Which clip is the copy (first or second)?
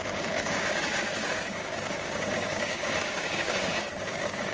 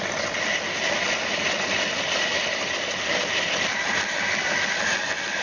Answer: first